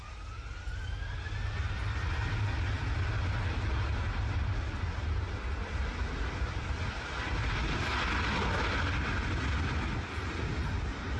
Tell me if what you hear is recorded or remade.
recorded